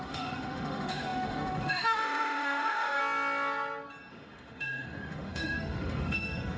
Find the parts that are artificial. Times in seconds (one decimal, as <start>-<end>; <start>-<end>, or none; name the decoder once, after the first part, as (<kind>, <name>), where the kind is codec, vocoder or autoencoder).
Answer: 0.0-3.0 (autoencoder, DAC-VAE); 4.1-6.6